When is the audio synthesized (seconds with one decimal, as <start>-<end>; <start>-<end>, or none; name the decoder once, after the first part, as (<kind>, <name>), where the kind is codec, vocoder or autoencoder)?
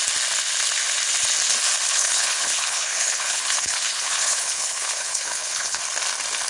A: 1.9-5.8 (codec, HILCodec)